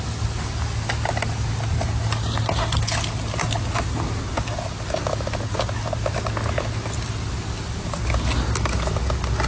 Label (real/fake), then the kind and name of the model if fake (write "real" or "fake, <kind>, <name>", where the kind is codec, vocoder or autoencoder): real